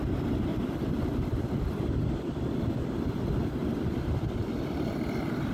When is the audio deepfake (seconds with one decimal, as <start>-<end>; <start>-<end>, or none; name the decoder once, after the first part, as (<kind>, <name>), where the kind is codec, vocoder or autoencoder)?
0.5-3.2 (vocoder, BigVGAN v2); 3.6-4.4